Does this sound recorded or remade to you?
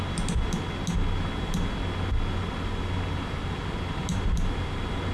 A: recorded